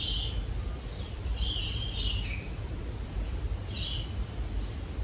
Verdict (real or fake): real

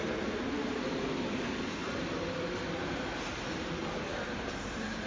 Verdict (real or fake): real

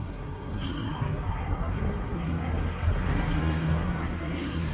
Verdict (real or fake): fake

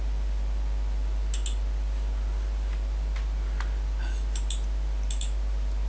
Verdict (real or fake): real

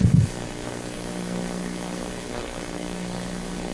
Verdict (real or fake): fake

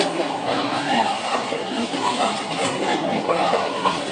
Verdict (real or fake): fake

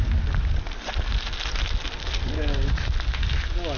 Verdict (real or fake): real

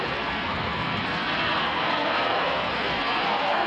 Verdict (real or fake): fake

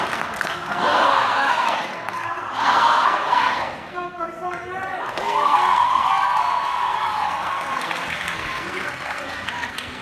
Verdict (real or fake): fake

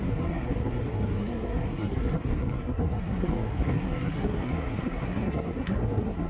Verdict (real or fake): fake